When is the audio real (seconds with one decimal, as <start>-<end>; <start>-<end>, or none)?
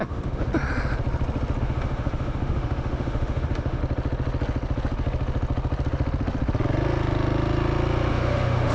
0.5-1.6; 3.8-8.1